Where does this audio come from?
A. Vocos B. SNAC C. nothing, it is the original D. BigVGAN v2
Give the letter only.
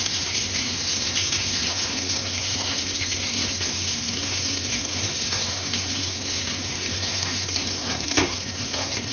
B